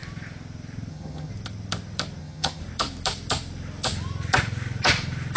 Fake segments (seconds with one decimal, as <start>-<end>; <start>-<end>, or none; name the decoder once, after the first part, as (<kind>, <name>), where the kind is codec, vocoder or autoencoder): 0.9-1.3 (vocoder, HiFi-GAN); 2.2-2.6